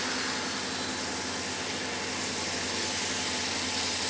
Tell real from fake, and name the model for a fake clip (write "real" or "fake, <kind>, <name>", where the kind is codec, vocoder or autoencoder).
real